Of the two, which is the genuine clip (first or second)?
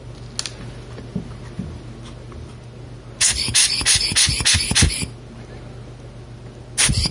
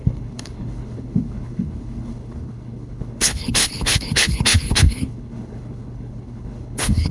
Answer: first